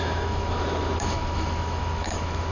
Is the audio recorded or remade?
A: remade